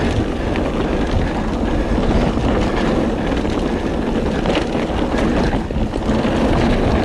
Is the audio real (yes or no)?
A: yes